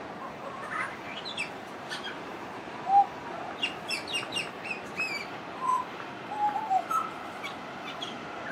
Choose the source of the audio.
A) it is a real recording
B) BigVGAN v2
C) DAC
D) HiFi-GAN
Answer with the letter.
B